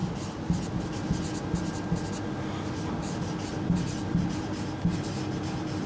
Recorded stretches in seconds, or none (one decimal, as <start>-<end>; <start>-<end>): 0.0-5.9